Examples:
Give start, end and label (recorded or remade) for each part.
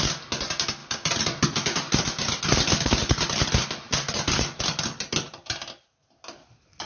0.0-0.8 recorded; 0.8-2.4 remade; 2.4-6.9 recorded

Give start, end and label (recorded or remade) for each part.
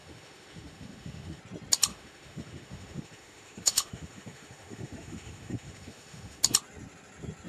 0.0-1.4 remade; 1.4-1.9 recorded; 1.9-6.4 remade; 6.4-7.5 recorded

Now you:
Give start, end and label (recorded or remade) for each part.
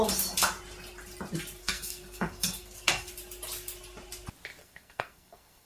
0.0-1.6 recorded; 1.6-3.1 remade; 3.1-4.6 recorded; 4.6-5.7 remade